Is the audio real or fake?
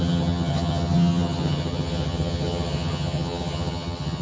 fake